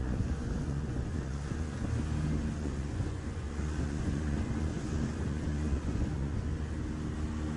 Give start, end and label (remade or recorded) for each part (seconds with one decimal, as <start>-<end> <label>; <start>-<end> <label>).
0.0-1.8 remade; 1.8-2.5 recorded; 2.5-6.5 remade; 6.5-7.6 recorded